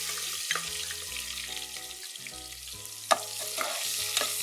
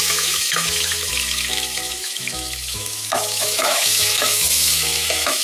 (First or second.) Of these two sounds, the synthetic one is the second